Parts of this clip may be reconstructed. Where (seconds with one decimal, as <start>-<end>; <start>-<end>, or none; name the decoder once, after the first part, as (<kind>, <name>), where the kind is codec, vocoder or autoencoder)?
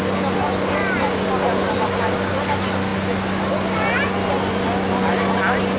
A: none